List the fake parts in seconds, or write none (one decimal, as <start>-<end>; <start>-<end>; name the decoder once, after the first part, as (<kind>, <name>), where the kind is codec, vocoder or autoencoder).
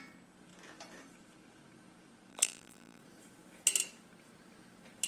2.3-3.0 (vocoder, BigVGAN v2)